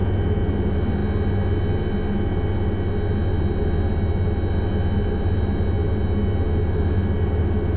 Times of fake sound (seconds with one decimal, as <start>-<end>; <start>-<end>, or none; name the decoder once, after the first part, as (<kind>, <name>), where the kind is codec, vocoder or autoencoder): none